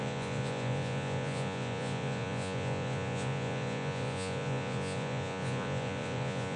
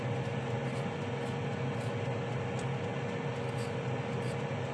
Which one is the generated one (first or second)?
first